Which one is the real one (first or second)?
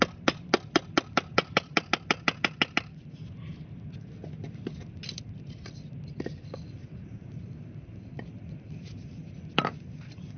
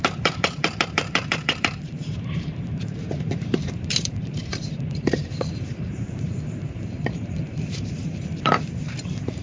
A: first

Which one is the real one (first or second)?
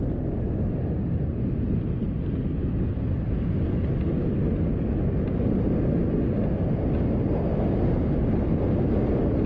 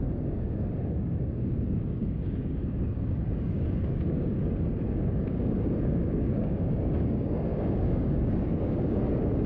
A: first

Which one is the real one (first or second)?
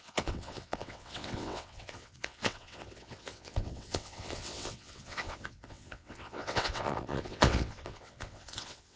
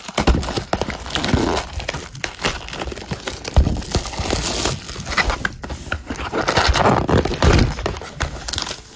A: second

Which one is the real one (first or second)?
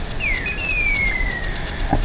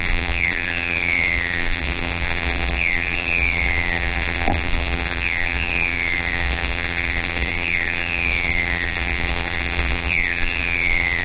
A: first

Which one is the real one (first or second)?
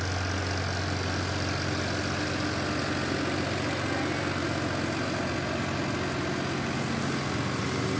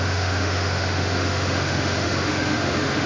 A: first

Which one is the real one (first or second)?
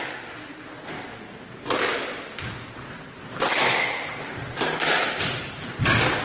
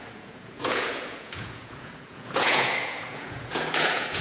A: first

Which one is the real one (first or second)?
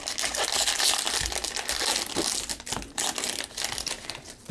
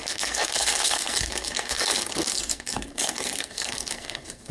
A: first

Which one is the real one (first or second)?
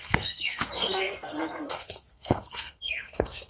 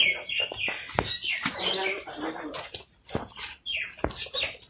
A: second